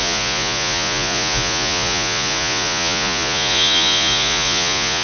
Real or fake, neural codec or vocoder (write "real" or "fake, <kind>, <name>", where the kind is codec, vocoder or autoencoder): fake, vocoder, Vocos